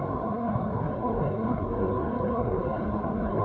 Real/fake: fake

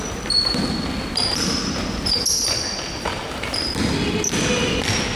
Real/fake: real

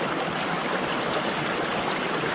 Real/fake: real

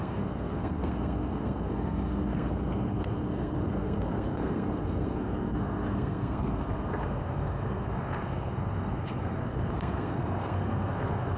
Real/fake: fake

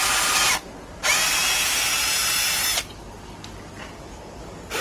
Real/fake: real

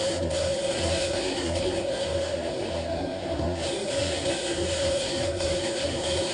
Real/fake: fake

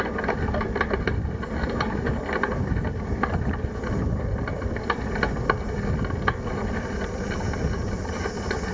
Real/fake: real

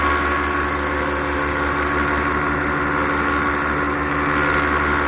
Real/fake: real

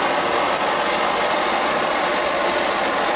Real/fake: real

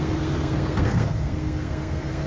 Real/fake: fake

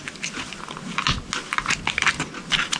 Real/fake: real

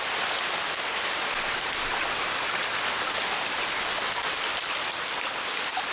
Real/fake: real